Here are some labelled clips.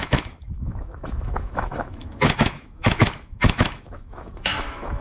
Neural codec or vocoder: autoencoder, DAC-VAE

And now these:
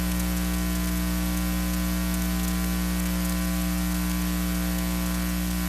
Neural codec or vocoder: none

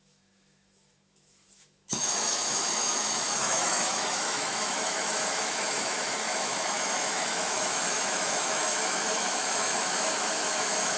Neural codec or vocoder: autoencoder, DAC-VAE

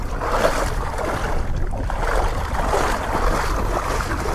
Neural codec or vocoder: none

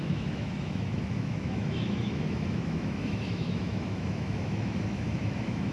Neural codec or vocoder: autoencoder, DAC-VAE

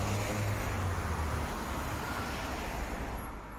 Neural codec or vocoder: none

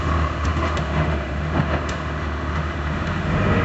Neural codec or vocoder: autoencoder, DAC-VAE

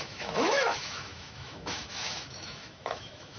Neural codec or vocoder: autoencoder, DAC-VAE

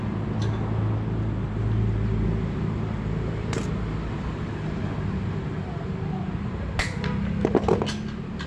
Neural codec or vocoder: none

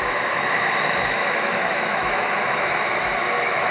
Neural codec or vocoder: autoencoder, DAC-VAE